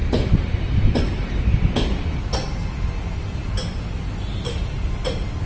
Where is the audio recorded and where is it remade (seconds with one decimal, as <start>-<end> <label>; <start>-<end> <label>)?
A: 0.0-5.5 recorded